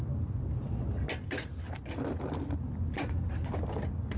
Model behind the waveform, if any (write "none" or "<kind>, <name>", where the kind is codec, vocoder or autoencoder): none